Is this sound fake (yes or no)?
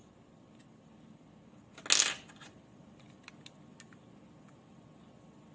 no